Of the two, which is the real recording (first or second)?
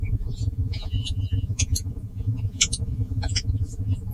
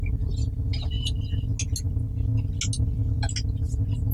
second